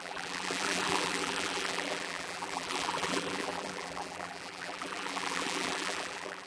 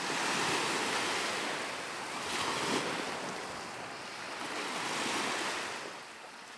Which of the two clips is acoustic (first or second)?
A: second